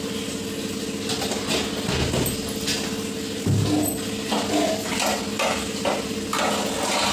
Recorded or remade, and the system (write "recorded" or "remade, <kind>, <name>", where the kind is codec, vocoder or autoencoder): recorded